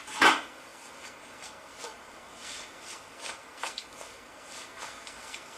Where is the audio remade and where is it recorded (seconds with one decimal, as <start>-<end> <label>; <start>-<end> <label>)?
0.0-5.6 remade